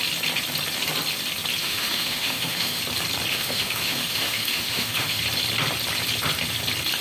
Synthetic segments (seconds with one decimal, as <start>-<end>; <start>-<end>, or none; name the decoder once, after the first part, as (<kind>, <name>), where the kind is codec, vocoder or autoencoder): 1.6-2.8 (autoencoder, DAC-VAE); 3.3-5.2

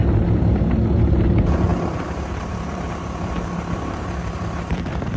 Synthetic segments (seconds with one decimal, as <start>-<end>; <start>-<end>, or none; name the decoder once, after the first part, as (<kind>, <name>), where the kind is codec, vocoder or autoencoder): 0.5-5.2 (vocoder, BigVGAN v2)

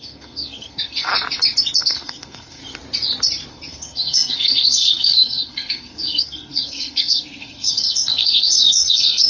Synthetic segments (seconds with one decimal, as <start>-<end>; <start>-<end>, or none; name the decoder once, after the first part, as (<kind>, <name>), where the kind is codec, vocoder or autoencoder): 0.0-1.1 (codec, SNAC); 1.8-2.6; 3.5-9.3